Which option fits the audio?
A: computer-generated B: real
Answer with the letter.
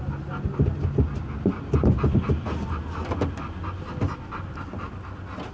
B